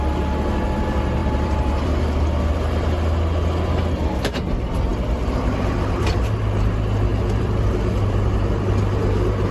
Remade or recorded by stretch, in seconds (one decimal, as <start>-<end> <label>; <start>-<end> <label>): 0.0-1.2 recorded; 1.2-2.4 remade; 2.4-4.9 recorded; 4.9-6.2 remade; 6.2-7.1 recorded; 7.1-8.8 remade; 8.8-9.5 recorded